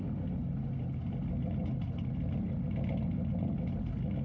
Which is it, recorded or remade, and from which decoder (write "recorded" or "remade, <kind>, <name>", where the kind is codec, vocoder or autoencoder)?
recorded